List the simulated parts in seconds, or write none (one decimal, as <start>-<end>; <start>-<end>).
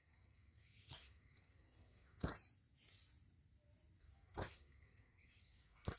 0.0-2.3; 4.0-6.0